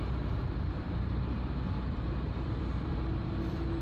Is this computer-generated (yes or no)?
yes